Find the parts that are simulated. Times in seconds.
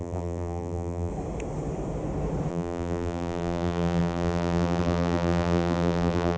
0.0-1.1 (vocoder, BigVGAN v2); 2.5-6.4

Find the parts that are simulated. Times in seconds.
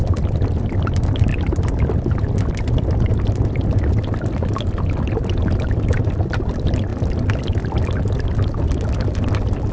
0.0-1.3 (vocoder, BigVGAN v2); 6.5-6.9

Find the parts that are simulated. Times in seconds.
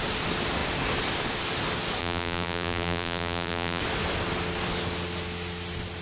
2.0-3.8 (vocoder, BigVGAN v2)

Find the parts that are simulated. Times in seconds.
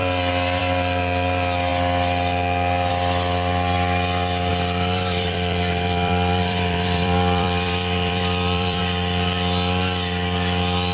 4.5-8.8 (vocoder, BigVGAN v2)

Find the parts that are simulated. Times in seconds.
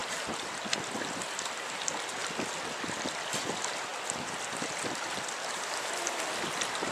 0.0-3.9 (vocoder, BigVGAN v2); 6.1-6.9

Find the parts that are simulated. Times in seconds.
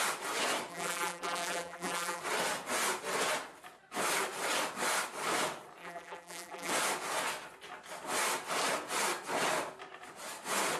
0.7-2.2 (vocoder, BigVGAN v2); 5.8-6.7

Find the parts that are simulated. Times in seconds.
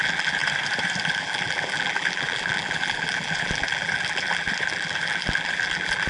0.0-0.4 (vocoder, BigVGAN v2); 1.0-6.1